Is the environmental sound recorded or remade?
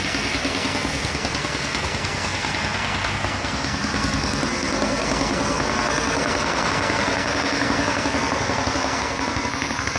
remade